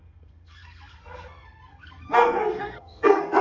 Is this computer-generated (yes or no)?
yes